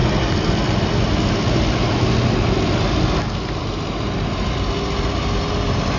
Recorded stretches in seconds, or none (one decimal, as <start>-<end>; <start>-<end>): 0.0-6.0